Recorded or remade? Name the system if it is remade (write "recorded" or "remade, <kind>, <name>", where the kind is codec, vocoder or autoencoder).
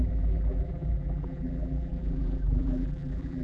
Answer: remade, vocoder, BigVGAN v2